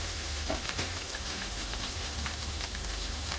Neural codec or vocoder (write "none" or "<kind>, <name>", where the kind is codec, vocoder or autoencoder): autoencoder, DAC-VAE